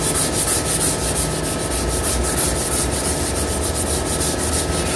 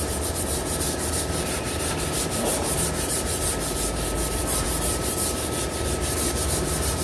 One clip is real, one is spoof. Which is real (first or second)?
first